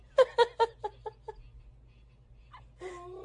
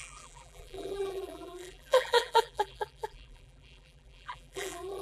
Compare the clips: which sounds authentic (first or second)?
first